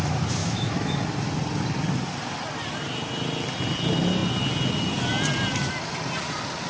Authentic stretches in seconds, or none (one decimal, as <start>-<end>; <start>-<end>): 0.0-0.4; 1.0-6.7